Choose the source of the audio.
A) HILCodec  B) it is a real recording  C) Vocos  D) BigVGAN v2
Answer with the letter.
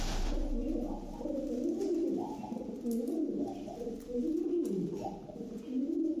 B